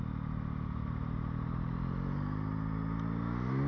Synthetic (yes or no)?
no